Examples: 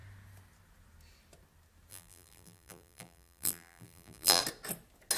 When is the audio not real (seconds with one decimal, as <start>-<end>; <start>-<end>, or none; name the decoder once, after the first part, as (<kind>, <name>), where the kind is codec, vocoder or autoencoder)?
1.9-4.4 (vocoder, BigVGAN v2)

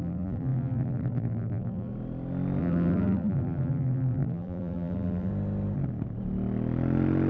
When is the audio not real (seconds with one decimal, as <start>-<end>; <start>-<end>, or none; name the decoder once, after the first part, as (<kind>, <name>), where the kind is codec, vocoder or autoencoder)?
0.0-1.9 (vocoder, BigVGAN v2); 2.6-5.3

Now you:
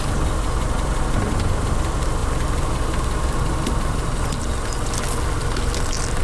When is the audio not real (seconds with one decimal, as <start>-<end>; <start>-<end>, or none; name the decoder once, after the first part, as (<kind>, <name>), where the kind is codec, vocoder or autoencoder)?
none

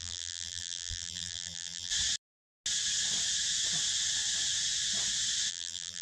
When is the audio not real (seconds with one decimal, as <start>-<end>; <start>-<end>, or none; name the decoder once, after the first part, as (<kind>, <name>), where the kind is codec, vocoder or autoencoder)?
0.0-1.9 (vocoder, BigVGAN v2); 5.5-6.0

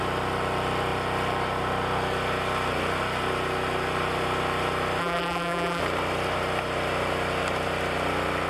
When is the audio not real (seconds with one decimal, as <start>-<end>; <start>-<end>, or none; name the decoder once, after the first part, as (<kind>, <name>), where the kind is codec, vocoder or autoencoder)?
5.0-5.8 (vocoder, BigVGAN v2)